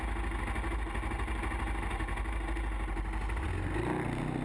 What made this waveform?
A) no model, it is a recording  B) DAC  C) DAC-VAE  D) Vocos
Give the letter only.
A